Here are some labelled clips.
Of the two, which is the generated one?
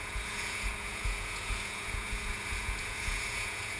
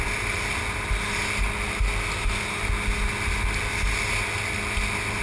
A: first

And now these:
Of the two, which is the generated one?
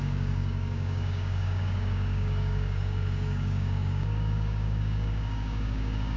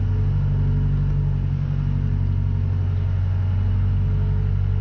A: first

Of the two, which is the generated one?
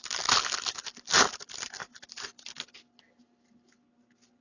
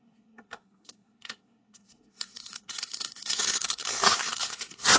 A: second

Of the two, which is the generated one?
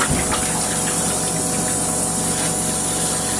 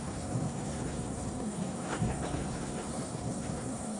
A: second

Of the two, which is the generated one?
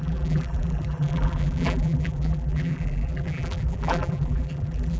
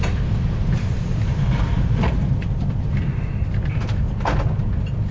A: first